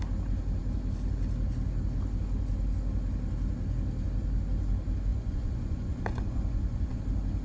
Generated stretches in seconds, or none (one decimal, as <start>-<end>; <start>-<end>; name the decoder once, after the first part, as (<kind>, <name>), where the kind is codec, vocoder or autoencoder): 5.1-7.0 (vocoder, Vocos)